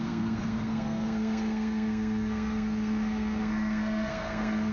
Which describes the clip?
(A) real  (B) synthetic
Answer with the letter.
B